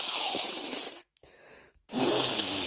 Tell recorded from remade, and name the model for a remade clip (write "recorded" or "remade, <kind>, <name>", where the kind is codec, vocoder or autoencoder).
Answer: remade, autoencoder, DAC-VAE